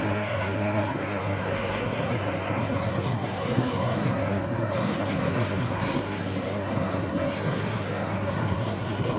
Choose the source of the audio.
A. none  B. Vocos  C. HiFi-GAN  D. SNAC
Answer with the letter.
D